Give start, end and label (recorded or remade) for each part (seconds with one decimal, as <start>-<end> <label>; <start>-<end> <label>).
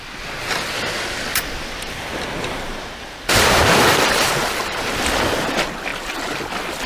0.0-1.3 recorded; 1.3-5.2 remade; 5.2-6.9 recorded